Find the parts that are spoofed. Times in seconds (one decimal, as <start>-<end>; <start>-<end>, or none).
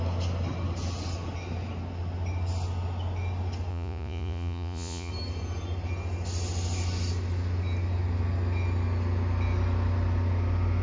3.7-5.1